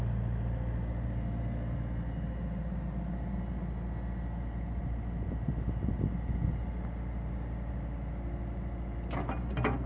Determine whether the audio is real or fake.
real